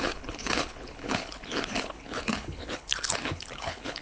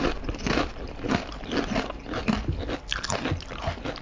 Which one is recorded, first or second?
second